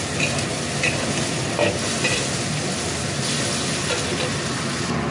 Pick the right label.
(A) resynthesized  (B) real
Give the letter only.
B